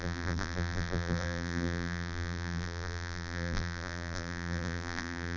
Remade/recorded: remade